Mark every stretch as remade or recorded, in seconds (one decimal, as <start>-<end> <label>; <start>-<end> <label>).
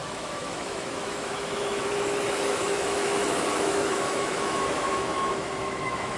0.0-6.2 remade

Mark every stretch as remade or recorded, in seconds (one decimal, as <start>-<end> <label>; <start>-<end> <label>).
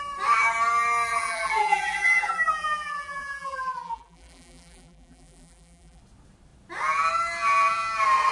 0.0-1.1 recorded; 1.1-6.0 remade; 6.0-8.3 recorded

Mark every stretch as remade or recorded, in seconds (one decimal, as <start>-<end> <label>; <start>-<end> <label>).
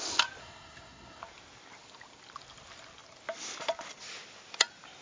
0.0-0.4 recorded; 0.4-1.2 remade; 1.2-5.0 recorded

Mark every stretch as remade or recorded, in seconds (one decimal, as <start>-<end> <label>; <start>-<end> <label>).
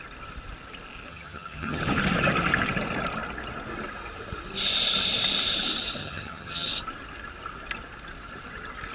0.0-1.1 recorded; 1.1-1.8 remade; 1.8-6.0 recorded; 6.0-6.7 remade; 6.7-8.9 recorded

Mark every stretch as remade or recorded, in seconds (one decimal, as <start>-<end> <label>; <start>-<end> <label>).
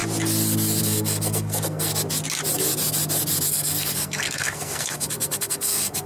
0.0-0.8 recorded; 0.8-1.9 remade; 1.9-3.5 recorded; 3.5-6.1 remade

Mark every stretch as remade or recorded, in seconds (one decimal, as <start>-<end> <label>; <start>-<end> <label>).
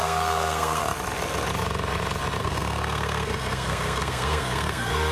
0.0-0.8 remade; 0.8-2.4 recorded; 2.4-5.1 remade